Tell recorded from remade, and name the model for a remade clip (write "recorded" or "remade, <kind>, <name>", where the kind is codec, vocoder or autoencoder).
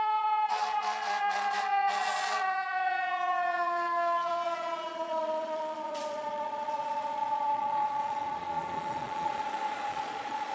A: remade, vocoder, Vocos